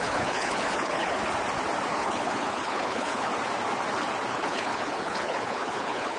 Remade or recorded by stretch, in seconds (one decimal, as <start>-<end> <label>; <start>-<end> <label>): 0.0-1.2 remade; 1.2-1.9 recorded; 1.9-3.3 remade; 3.3-4.3 recorded; 4.3-6.2 remade